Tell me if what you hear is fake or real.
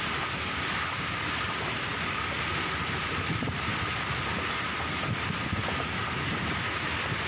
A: real